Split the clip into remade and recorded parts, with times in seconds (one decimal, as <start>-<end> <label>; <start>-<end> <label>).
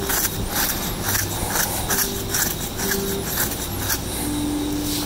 0.0-5.1 recorded